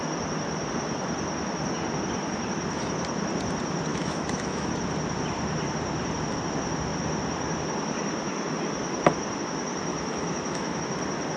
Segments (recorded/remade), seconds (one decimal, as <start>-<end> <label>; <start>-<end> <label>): 0.0-3.9 recorded; 3.9-4.7 remade; 4.7-9.9 recorded; 9.9-10.8 remade; 10.8-11.4 recorded